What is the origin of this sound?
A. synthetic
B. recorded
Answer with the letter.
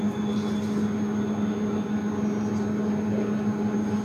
B